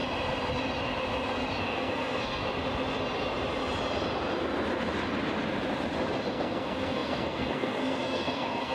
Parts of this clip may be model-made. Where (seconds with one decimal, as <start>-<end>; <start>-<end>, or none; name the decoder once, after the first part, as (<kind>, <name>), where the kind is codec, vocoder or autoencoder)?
1.6-2.4 (codec, SNAC); 6.3-8.7